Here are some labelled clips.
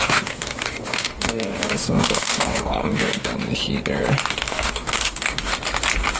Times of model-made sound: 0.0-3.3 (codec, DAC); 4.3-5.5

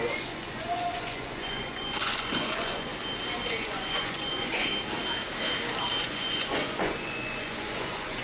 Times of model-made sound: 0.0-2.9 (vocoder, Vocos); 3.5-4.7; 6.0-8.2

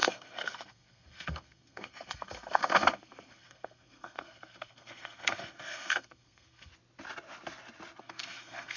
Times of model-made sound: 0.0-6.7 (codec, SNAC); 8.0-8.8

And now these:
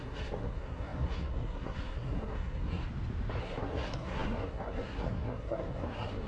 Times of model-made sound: 0.0-2.8 (codec, SNAC); 3.4-6.3

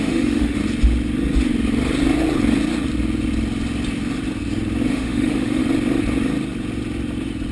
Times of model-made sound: 0.0-0.6 (autoencoder, DAC-VAE); 4.9-5.6

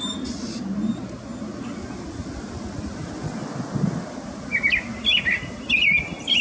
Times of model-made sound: none

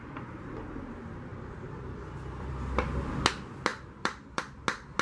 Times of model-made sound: 1.3-2.5 (vocoder, BigVGAN v2); 3.7-4.4

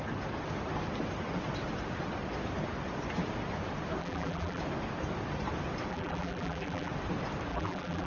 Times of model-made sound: 4.0-4.6 (vocoder, BigVGAN v2); 5.9-6.9; 7.5-8.1